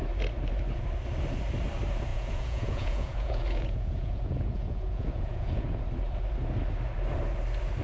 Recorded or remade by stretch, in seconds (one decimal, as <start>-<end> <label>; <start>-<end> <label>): 0.0-2.1 recorded; 2.1-5.8 remade; 5.8-7.8 recorded